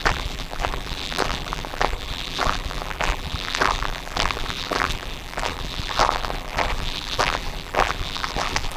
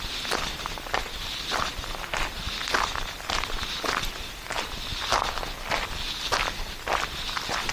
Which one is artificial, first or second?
first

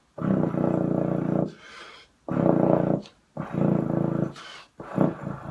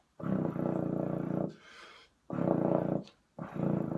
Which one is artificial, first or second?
second